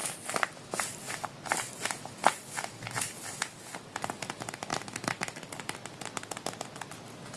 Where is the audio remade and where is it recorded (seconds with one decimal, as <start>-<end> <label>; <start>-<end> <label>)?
0.0-7.4 recorded

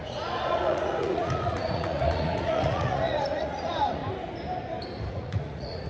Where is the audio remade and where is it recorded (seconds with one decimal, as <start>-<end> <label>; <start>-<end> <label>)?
0.0-4.0 remade; 4.0-5.1 recorded; 5.1-5.9 remade

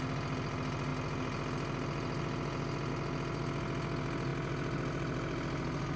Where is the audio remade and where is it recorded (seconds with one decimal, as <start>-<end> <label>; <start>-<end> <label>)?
0.0-6.0 recorded